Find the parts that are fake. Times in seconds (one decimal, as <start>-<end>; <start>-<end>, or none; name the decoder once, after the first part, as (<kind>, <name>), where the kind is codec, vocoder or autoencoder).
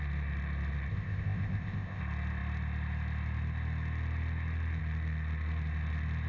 0.9-2.0 (codec, ZipCodec)